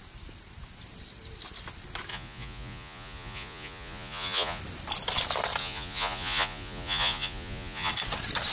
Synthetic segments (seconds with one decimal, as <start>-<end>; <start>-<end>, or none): 2.1-4.6; 5.6-7.9